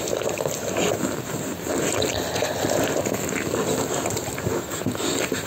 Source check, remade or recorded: recorded